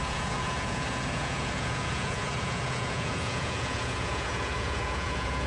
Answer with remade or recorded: remade